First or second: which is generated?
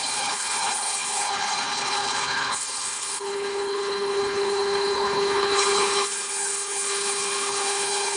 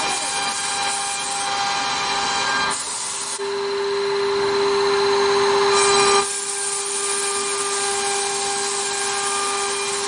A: first